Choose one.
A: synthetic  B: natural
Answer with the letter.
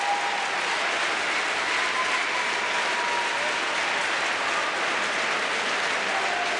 B